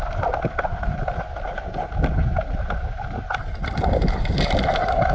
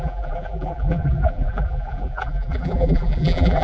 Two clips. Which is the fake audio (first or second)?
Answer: second